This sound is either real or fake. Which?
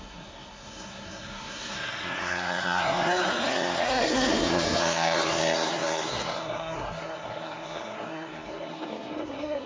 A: fake